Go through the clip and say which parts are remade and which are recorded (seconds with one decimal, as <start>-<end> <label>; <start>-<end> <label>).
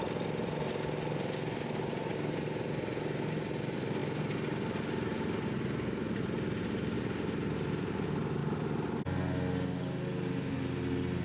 0.0-11.2 recorded